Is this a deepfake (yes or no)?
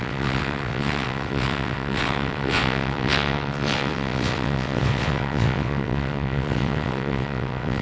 yes